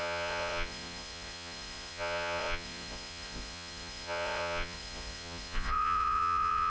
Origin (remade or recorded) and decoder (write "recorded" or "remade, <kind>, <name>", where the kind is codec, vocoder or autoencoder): remade, vocoder, Vocos